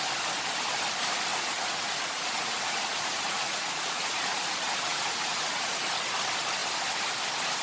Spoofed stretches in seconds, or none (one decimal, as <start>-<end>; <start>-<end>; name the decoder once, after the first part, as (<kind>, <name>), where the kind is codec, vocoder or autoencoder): 1.3-5.9 (vocoder, Vocos)